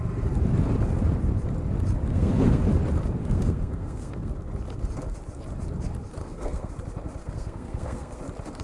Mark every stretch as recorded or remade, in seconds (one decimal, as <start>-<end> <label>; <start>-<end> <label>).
0.0-2.1 recorded; 2.1-2.6 remade; 2.6-3.2 recorded; 3.2-4.3 remade; 4.3-6.2 recorded; 6.2-6.7 remade; 6.7-7.2 recorded; 7.2-8.2 remade; 8.2-8.6 recorded